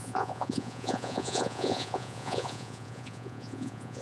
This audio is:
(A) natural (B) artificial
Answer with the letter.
B